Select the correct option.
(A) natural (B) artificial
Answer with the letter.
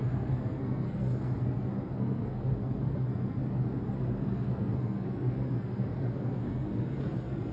B